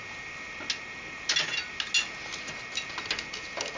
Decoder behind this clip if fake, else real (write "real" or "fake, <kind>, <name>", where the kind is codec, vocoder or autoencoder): real